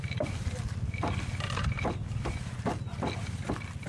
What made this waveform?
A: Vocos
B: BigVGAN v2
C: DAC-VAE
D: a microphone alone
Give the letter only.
D